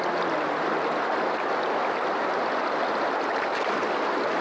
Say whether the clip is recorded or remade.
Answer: recorded